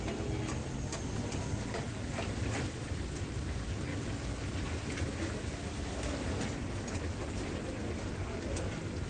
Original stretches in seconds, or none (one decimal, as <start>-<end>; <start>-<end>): 0.0-9.1